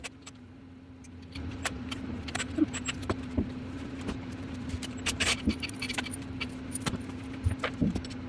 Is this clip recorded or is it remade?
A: remade